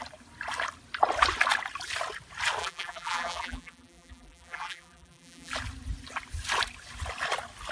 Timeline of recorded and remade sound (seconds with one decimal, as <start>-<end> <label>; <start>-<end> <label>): 0.0-2.6 recorded; 2.6-5.5 remade; 5.5-7.7 recorded